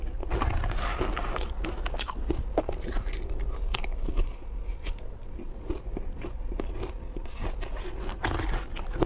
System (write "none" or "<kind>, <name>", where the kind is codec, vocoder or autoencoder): none